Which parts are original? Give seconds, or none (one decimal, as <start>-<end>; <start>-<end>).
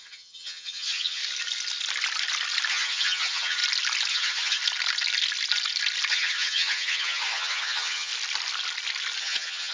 1.2-2.7; 3.6-4.1; 4.6-6.1; 8.1-9.2